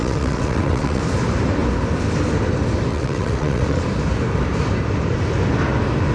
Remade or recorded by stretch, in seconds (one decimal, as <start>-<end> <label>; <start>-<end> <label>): 0.0-1.0 remade; 1.0-2.9 recorded; 2.9-3.8 remade; 3.8-6.1 recorded